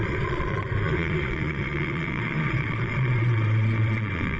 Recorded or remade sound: remade